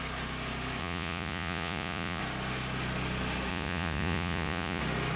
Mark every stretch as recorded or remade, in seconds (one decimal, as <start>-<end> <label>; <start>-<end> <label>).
0.0-0.8 recorded; 0.8-2.2 remade; 2.2-3.5 recorded; 3.5-4.8 remade; 4.8-5.2 recorded